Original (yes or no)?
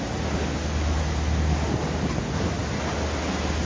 yes